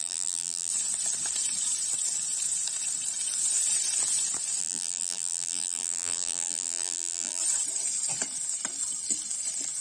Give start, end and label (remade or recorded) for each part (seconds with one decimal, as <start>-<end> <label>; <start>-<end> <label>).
0.0-0.7 remade; 0.7-4.6 recorded; 4.6-7.4 remade; 7.4-9.8 recorded